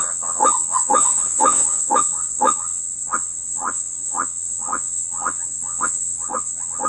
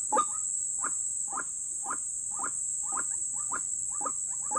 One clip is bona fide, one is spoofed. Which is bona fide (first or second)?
second